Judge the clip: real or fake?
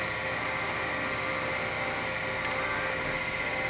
real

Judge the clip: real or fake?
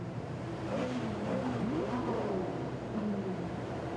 fake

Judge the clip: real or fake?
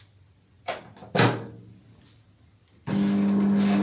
real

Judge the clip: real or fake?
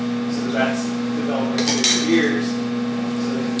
real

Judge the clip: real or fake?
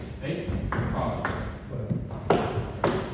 real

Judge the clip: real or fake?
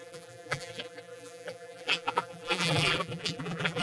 fake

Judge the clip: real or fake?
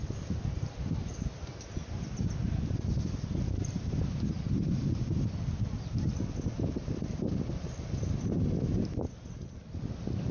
real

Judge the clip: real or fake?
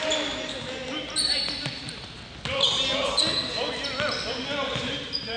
real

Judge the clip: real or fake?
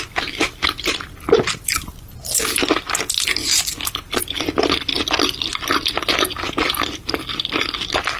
real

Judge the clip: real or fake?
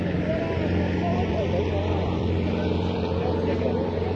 fake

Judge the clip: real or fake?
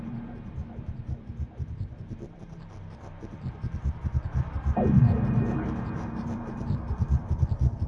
fake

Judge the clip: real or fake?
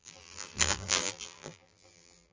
fake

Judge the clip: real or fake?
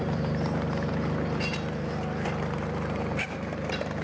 fake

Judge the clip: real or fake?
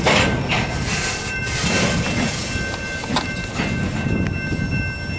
real